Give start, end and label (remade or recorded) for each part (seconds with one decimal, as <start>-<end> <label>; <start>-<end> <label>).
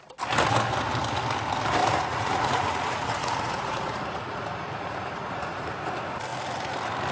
0.0-1.8 recorded; 1.8-5.7 remade; 5.7-7.1 recorded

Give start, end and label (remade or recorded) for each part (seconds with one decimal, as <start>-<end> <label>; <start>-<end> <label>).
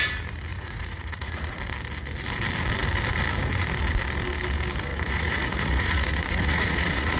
0.0-0.5 recorded; 0.5-1.6 remade; 1.6-4.9 recorded; 4.9-7.2 remade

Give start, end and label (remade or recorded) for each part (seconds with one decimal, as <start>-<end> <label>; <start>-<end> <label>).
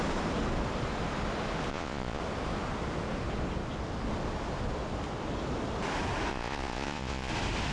0.0-1.7 recorded; 1.7-2.2 remade; 2.2-6.3 recorded; 6.3-7.3 remade; 7.3-7.7 recorded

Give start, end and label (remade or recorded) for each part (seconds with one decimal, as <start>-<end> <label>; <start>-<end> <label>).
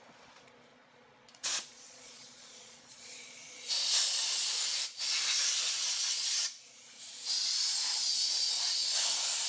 0.0-0.7 recorded; 0.7-3.7 remade; 3.7-9.5 recorded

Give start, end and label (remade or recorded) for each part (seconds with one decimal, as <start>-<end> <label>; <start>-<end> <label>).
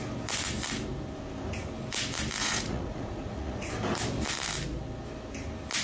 0.0-2.4 recorded; 2.4-3.7 remade; 3.7-5.8 recorded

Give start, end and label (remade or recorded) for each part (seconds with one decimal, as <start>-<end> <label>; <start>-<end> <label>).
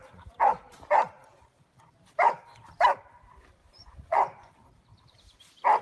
0.0-3.6 recorded; 3.6-4.5 remade; 4.5-5.8 recorded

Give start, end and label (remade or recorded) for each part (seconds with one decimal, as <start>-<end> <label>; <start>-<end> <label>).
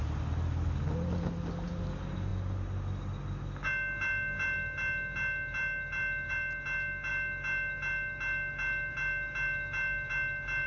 0.0-10.7 recorded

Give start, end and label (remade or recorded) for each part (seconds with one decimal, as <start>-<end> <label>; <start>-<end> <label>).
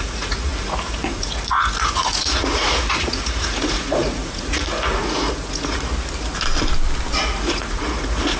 0.0-5.9 remade; 5.9-7.2 recorded; 7.2-8.4 remade